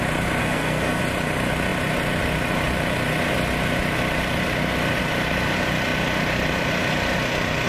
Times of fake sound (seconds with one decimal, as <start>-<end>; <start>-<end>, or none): 0.4-1.0